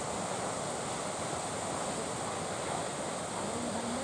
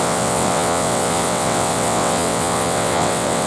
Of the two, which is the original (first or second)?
first